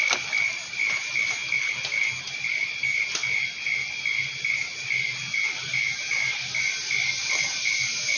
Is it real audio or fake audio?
real